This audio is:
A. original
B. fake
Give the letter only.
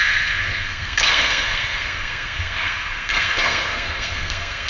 B